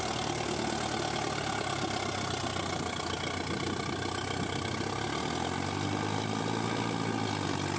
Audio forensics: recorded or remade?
recorded